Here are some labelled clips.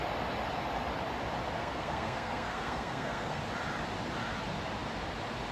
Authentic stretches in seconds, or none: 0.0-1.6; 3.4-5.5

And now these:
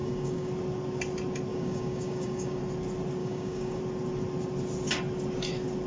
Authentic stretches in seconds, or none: 0.5-1.5; 2.6-3.2; 3.8-5.9

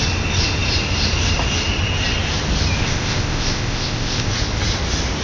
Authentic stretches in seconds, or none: 0.0-2.8; 4.3-5.2

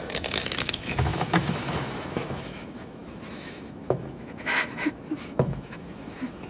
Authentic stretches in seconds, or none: none

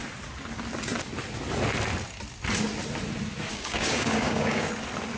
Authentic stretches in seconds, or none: 0.0-3.5; 4.7-5.2

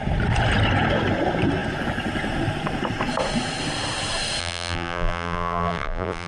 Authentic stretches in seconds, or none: 0.0-4.4